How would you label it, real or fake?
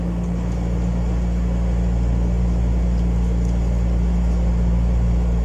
real